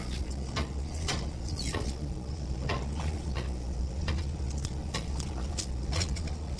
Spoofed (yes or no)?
yes